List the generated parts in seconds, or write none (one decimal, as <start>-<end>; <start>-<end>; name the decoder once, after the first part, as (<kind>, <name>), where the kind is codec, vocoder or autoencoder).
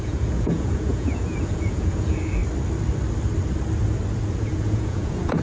0.0-2.4 (vocoder, Vocos); 4.4-5.4